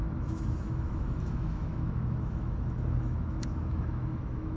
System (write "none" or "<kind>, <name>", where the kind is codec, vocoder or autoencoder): autoencoder, DAC-VAE